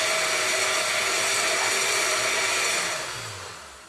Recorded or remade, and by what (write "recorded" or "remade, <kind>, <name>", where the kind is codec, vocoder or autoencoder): recorded